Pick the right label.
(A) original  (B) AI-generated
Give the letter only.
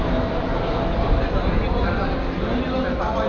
A